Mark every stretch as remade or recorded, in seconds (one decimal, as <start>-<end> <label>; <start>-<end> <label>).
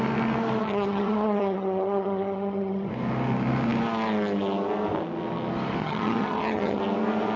0.0-0.6 recorded; 0.6-2.9 remade; 2.9-5.8 recorded; 5.8-6.8 remade; 6.8-7.4 recorded